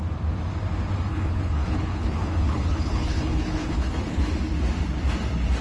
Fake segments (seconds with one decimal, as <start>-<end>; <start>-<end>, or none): 1.1-4.2